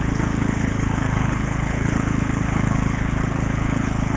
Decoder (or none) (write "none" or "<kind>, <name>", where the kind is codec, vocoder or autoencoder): codec, HILCodec